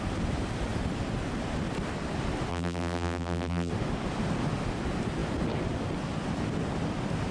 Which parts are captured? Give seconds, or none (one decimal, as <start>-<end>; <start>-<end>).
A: 0.0-2.5; 3.7-7.3